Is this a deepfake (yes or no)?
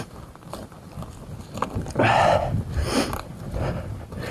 no